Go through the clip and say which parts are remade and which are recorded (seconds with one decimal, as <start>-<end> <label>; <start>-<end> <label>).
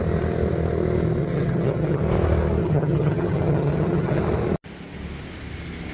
0.0-1.2 recorded; 1.2-2.0 remade; 2.0-2.6 recorded; 2.6-4.2 remade; 4.2-5.9 recorded